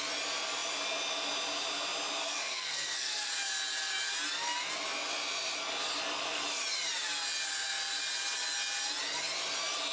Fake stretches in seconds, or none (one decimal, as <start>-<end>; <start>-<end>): 2.2-3.3